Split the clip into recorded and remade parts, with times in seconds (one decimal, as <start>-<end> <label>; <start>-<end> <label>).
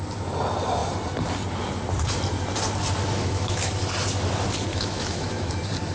0.0-3.2 recorded; 3.2-3.7 remade; 3.7-4.7 recorded; 4.7-5.5 remade; 5.5-5.9 recorded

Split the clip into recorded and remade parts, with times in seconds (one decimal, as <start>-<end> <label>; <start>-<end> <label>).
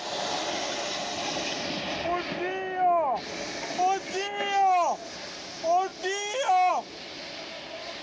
0.0-8.0 recorded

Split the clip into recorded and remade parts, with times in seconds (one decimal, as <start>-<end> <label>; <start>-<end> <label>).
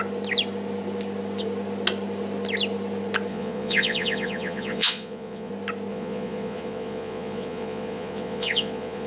0.0-3.3 recorded; 3.3-5.5 remade; 5.5-5.9 recorded; 5.9-9.1 remade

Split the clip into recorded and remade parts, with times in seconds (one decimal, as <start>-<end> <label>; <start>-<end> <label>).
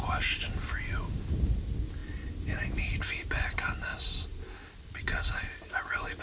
0.0-6.2 recorded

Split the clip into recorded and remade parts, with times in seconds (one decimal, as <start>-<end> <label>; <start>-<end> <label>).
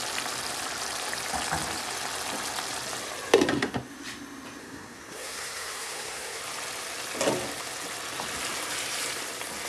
0.0-4.6 recorded; 4.6-6.4 remade; 6.4-9.7 recorded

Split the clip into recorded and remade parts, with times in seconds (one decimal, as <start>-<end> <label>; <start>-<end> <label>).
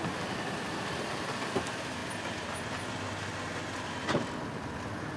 0.0-5.2 recorded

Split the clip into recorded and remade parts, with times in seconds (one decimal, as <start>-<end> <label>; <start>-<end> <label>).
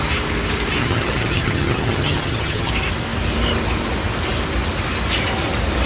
0.0-0.8 recorded; 0.8-2.7 remade; 2.7-5.9 recorded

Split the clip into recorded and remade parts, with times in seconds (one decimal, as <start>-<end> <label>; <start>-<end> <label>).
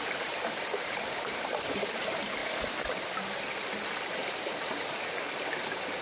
0.0-2.4 remade; 2.4-6.0 recorded